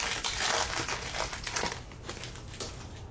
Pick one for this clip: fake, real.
real